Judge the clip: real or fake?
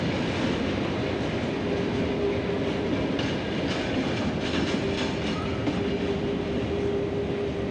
real